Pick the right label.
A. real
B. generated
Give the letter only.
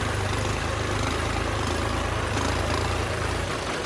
A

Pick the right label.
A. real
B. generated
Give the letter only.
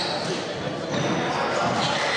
A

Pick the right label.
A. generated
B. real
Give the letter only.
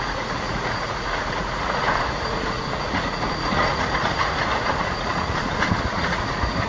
A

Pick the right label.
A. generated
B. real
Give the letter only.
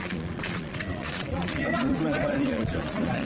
A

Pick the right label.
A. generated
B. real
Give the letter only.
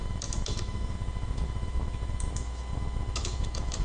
A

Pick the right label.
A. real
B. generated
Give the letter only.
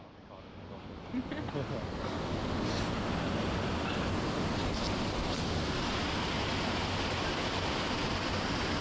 A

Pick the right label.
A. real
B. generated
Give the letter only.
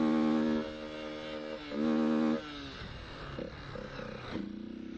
A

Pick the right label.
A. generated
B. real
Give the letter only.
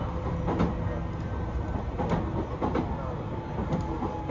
B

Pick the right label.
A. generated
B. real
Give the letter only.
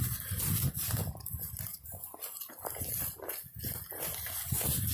B